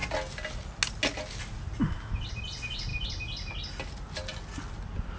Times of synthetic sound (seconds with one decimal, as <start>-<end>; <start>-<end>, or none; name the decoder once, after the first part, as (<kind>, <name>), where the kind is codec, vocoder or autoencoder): none

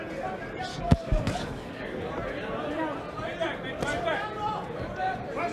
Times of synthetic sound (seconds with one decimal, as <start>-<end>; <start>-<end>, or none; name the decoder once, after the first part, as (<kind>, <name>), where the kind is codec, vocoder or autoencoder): 0.7-2.1 (codec, DAC)

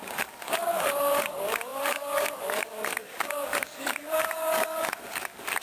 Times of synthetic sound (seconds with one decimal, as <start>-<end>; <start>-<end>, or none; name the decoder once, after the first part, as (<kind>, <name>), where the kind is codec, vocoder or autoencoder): 0.0-5.6 (codec, DAC)